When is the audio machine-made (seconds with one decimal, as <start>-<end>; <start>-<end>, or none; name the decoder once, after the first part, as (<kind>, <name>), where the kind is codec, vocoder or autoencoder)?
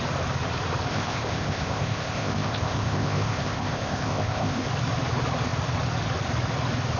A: 0.9-4.7 (codec, ZipCodec)